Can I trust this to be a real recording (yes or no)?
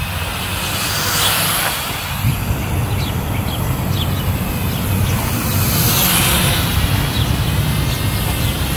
yes